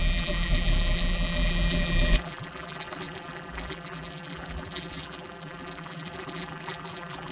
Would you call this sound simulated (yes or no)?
yes